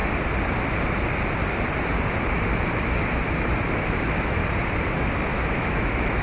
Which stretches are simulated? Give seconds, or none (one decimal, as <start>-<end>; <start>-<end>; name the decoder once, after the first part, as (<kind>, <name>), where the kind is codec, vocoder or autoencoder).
3.7-4.4 (autoencoder, DAC-VAE); 5.3-6.2